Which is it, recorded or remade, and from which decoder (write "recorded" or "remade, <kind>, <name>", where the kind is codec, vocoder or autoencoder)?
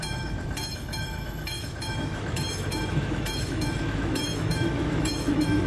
remade, autoencoder, DAC-VAE